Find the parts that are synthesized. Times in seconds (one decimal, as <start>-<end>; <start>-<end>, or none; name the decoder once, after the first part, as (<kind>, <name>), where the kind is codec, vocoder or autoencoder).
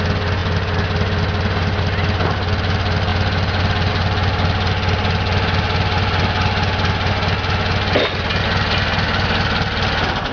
none